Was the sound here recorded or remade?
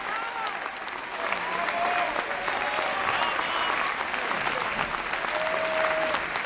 recorded